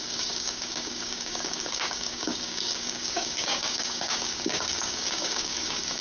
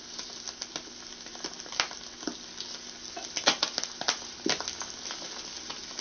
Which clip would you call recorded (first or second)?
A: second